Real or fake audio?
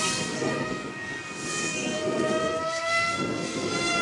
fake